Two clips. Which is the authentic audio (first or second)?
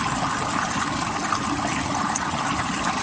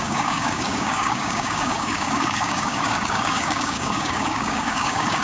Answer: first